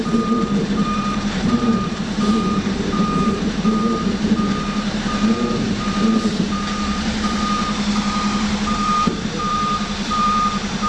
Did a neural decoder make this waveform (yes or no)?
yes